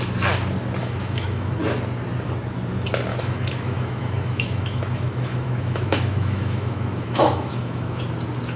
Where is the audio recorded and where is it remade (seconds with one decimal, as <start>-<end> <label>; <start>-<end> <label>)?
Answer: 0.0-0.8 recorded; 0.8-1.6 remade; 1.6-3.1 recorded; 3.1-8.0 remade; 8.0-8.6 recorded